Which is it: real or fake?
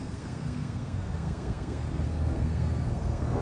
fake